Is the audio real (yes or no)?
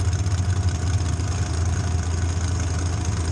yes